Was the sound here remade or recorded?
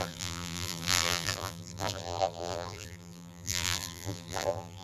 remade